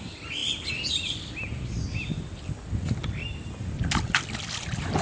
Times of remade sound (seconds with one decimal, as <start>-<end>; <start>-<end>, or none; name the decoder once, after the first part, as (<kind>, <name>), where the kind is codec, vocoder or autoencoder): none